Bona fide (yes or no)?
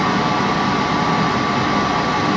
yes